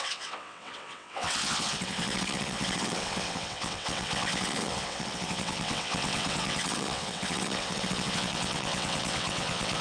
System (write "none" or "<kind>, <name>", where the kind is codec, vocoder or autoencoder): vocoder, WaveNeXt